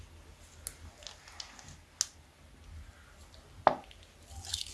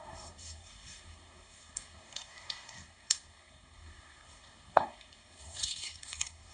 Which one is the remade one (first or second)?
second